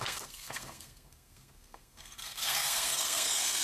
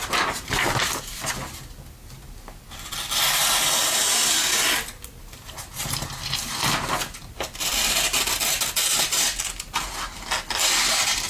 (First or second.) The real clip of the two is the second